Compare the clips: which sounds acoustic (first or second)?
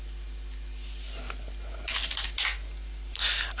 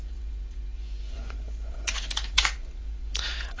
first